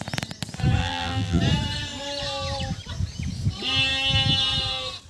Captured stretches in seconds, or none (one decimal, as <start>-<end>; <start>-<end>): 0.0-0.8; 1.4-5.1